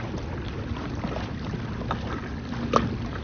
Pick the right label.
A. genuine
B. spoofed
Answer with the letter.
A